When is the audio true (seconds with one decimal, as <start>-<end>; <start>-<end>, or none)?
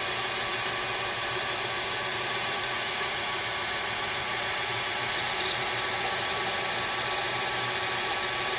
0.0-2.1; 5.7-8.6